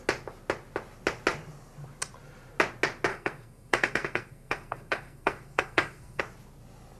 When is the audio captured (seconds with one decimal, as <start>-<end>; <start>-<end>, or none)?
0.0-3.1; 6.2-7.0